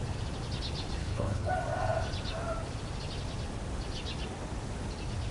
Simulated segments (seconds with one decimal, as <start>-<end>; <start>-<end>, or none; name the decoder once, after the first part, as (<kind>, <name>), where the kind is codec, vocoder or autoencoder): 1.0-1.5 (codec, HILCodec)